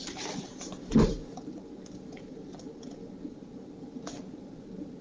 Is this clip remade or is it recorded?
recorded